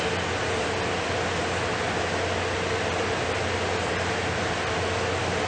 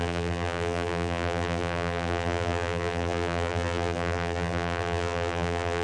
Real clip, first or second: first